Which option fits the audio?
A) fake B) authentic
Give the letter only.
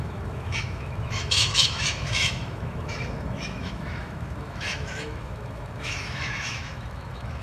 A